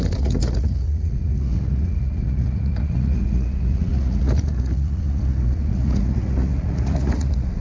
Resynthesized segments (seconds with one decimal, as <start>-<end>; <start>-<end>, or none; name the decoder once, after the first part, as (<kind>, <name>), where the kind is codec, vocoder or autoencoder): 0.0-7.6 (vocoder, Vocos)